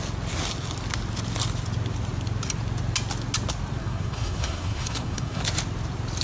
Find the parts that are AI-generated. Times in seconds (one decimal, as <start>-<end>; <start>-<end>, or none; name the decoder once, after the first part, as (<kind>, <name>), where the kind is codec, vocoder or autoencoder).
3.8-5.4 (codec, SNAC)